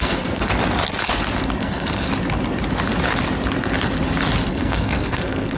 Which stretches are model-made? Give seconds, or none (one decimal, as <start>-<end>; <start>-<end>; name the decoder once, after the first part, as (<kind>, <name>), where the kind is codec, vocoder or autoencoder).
0.0-0.5 (codec, SNAC); 1.6-2.1; 4.5-5.6